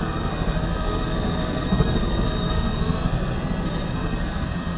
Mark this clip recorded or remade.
remade